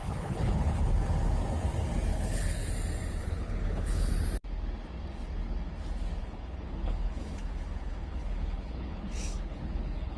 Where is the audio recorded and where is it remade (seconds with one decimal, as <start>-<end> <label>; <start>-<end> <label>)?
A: 0.0-0.9 remade; 0.9-2.1 recorded; 2.1-2.7 remade; 2.7-3.2 recorded; 3.2-4.1 remade; 4.1-6.2 recorded; 6.2-10.2 remade